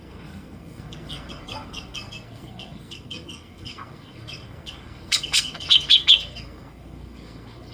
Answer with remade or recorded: remade